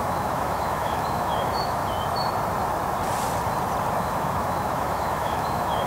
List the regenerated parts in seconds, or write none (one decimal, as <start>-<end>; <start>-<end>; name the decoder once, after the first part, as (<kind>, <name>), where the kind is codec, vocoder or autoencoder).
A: 0.0-1.8 (autoencoder, DAC-VAE); 3.9-5.9